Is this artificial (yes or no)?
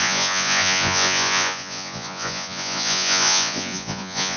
yes